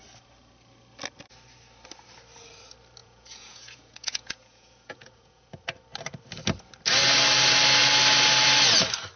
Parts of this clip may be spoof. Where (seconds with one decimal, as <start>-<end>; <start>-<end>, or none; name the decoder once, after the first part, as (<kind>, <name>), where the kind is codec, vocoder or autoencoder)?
3.0-5.5 (vocoder, Vocos)